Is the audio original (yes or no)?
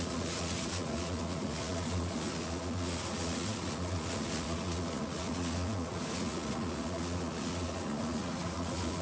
no